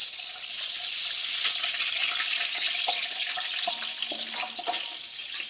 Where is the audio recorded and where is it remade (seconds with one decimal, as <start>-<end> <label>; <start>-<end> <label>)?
0.0-5.5 recorded